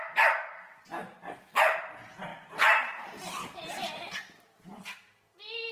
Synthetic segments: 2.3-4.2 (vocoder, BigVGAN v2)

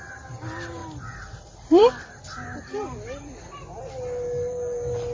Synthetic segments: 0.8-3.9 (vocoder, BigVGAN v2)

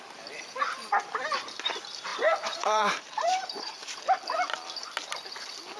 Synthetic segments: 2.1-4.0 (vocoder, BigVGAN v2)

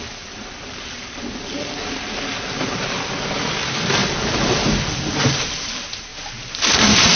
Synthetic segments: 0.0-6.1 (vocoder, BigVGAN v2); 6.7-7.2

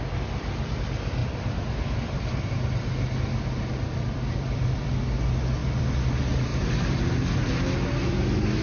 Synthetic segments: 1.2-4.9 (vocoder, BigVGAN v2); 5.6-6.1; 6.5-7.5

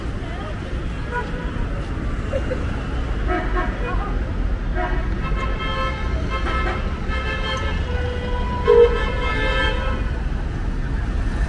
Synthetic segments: none

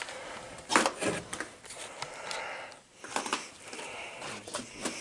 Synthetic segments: 3.3-4.6 (vocoder, BigVGAN v2)

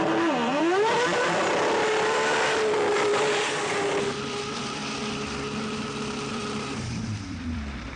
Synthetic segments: 0.0-4.8 (vocoder, BigVGAN v2); 6.3-8.0